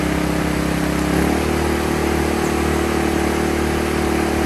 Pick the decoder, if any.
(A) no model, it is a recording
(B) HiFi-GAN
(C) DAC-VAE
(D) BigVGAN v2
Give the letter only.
A